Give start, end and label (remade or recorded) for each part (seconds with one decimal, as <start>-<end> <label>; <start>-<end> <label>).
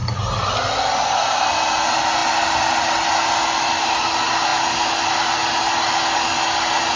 0.0-7.0 recorded